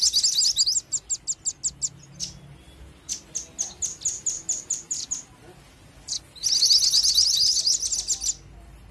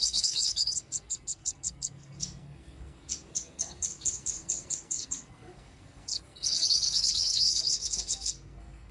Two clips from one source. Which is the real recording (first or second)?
first